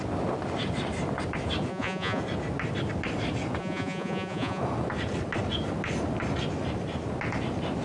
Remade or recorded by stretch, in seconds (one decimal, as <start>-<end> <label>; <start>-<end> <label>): 0.0-1.7 recorded; 1.7-2.2 remade; 2.2-3.6 recorded; 3.6-4.6 remade; 4.6-7.8 recorded